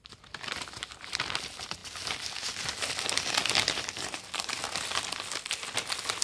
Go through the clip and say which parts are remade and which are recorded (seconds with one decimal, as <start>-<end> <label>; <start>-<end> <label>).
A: 0.0-6.2 recorded

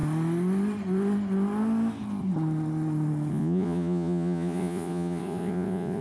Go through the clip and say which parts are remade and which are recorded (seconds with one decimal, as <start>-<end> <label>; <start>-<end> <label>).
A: 0.0-3.3 recorded; 3.3-6.0 remade

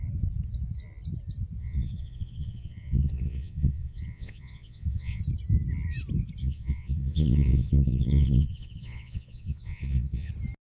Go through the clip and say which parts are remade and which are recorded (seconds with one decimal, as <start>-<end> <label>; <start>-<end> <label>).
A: 0.0-1.6 recorded; 1.6-5.2 remade; 5.2-6.4 recorded; 6.4-10.3 remade; 10.3-10.8 recorded

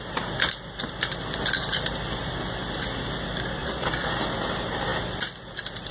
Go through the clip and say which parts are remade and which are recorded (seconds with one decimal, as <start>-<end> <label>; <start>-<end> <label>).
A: 0.0-3.6 recorded; 3.6-4.1 remade; 4.1-5.9 recorded

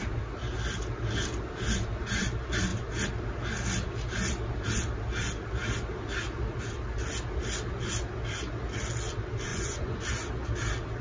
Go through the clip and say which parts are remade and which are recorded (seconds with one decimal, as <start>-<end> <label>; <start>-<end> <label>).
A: 0.0-9.5 recorded; 9.5-10.0 remade; 10.0-11.0 recorded

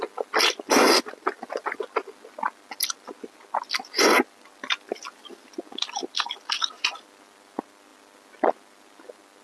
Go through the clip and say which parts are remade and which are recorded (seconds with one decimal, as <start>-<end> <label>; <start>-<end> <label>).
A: 0.0-9.4 recorded

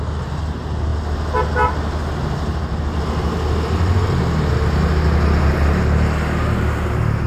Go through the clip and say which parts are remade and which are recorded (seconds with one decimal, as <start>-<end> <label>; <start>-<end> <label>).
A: 0.0-7.3 recorded